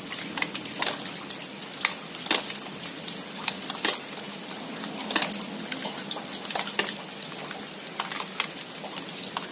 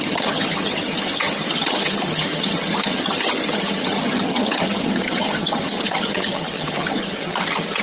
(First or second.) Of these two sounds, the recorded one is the first